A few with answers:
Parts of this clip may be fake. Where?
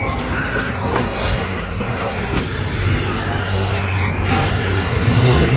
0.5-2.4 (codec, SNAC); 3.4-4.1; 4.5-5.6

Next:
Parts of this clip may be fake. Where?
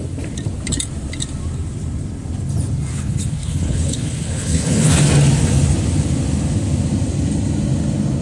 2.9-5.0 (codec, HILCodec)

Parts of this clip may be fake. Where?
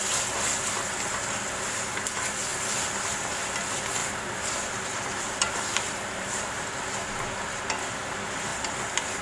4.0-6.4 (vocoder, BigVGAN v2)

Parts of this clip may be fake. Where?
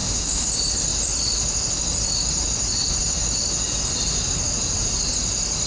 0.0-0.5 (autoencoder, DAC-VAE)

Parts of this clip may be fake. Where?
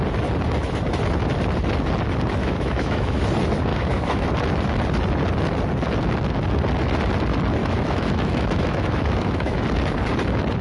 2.4-3.2 (autoencoder, DAC-VAE); 3.7-4.3; 7.6-9.6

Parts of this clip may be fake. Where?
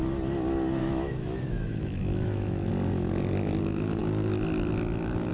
0.8-2.7 (autoencoder, DAC-VAE)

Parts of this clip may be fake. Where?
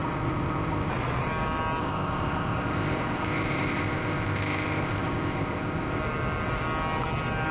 0.0-0.9 (codec, ZipCodec); 1.8-6.0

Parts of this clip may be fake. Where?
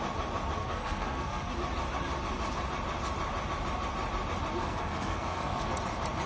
0.6-1.5 (codec, SNAC); 4.6-5.7